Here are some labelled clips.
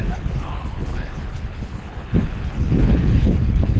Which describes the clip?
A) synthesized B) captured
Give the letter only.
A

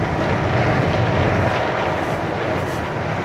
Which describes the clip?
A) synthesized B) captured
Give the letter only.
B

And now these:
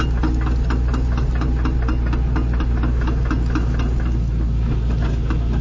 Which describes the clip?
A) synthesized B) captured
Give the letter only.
B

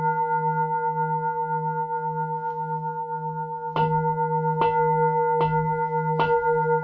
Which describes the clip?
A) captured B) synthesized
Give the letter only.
A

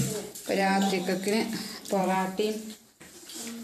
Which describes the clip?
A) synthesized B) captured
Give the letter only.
A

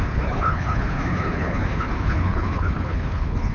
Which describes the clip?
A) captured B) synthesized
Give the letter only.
B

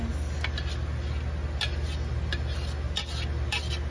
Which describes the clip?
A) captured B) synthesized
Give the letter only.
A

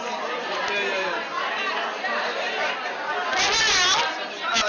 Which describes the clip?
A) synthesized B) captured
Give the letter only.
B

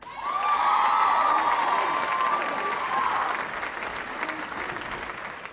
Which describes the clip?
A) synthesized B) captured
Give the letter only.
B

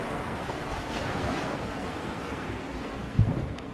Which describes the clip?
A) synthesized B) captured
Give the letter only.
A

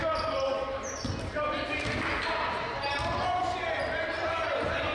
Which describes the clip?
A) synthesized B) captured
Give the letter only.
B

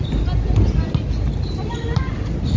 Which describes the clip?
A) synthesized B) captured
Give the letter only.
B